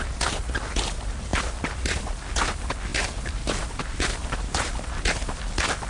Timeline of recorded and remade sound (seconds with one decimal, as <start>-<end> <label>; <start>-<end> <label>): 0.0-2.9 recorded; 2.9-4.7 remade; 4.7-5.9 recorded